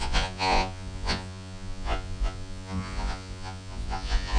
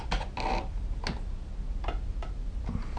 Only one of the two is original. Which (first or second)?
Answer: second